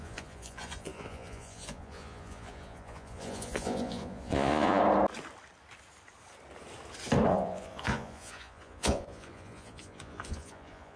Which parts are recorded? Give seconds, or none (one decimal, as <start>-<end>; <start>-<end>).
4.8-7.3